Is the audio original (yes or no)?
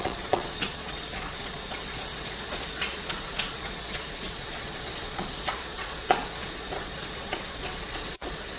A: no